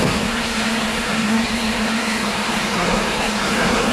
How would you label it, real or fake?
fake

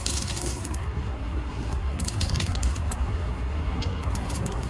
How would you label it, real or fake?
fake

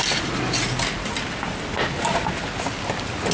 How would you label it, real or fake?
real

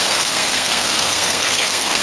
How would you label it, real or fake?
fake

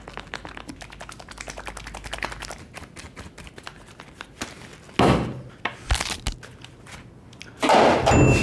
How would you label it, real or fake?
real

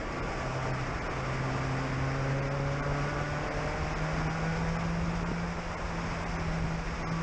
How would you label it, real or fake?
real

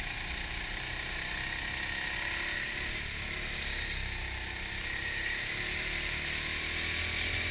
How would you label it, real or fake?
real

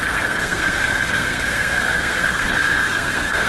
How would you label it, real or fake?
fake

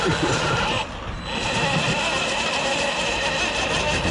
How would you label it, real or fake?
real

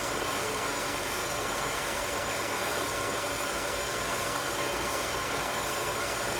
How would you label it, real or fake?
fake